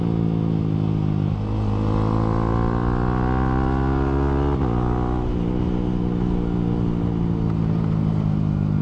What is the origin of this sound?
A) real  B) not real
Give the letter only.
A